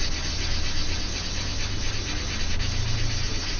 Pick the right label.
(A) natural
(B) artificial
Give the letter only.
A